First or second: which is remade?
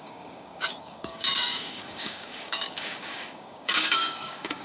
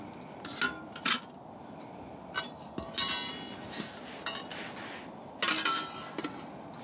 first